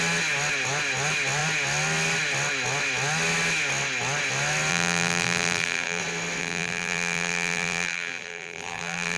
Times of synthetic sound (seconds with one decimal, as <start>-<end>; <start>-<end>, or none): 4.7-6.0; 6.4-9.2